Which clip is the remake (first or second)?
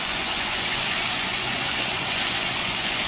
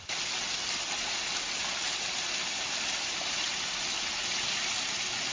first